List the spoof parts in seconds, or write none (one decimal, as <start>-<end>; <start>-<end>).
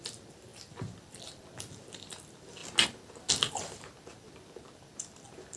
0.0-2.6; 3.3-5.6